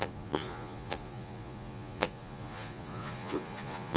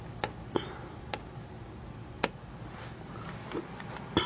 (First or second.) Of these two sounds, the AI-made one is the first